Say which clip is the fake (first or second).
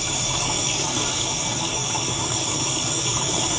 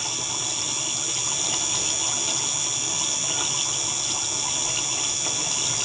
first